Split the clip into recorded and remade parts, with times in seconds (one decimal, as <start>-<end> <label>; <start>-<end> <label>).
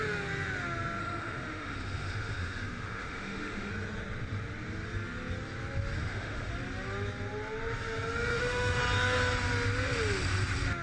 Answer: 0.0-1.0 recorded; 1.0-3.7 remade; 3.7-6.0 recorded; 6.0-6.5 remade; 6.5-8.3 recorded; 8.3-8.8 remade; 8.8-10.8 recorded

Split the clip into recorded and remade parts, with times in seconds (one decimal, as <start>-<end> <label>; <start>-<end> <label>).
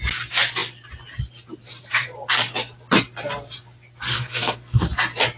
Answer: 0.0-4.1 recorded; 4.1-4.9 remade; 4.9-5.4 recorded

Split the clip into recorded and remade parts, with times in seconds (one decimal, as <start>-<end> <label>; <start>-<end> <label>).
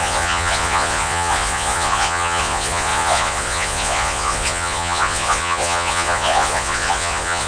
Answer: 0.0-7.5 remade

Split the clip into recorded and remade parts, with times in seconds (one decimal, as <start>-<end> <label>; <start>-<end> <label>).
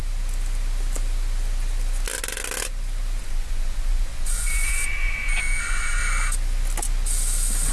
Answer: 0.0-3.2 recorded; 3.2-6.0 remade; 6.0-7.7 recorded